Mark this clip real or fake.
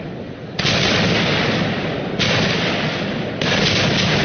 real